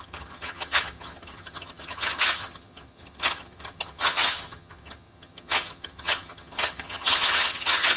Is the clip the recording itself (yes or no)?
no